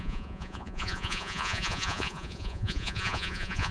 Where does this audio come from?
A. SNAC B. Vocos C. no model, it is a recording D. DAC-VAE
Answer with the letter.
B